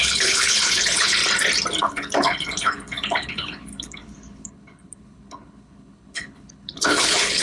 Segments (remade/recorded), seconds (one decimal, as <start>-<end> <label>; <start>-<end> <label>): 0.0-1.2 remade; 1.2-1.8 recorded; 1.8-7.4 remade